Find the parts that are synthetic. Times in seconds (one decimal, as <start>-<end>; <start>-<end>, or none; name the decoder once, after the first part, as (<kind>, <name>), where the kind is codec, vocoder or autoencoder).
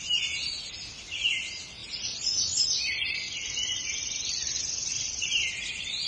none